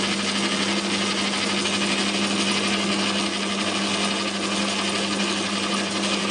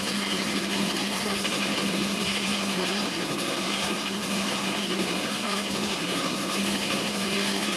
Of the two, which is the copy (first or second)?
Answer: second